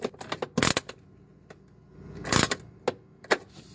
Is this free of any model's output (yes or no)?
yes